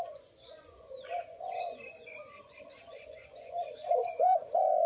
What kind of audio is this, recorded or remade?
remade